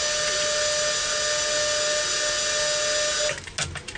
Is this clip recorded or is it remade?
recorded